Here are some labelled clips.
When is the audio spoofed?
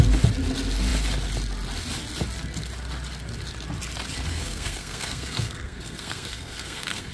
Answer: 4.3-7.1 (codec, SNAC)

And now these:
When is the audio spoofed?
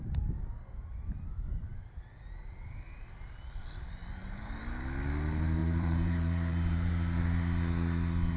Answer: 4.0-4.6 (vocoder, BigVGAN v2); 5.6-6.9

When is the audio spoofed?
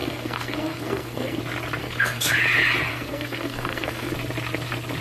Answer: 0.0-1.4 (codec, SNAC); 1.8-2.3; 2.9-4.1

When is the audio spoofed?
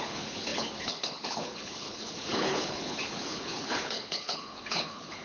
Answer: 0.0-5.2 (codec, HILCodec)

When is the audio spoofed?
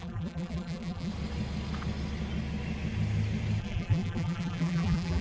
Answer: 0.0-1.1 (vocoder, BigVGAN v2); 3.6-5.2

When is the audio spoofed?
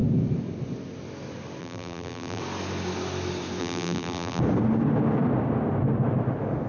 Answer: 1.6-2.4 (vocoder, BigVGAN v2); 3.6-4.4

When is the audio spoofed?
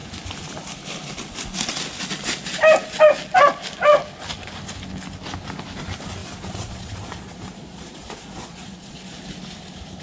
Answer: 6.2-9.2 (vocoder, Vocos)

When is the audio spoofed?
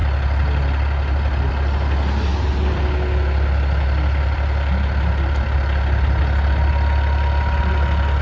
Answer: none